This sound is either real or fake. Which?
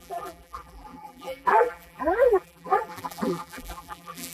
fake